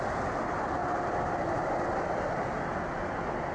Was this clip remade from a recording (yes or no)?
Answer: no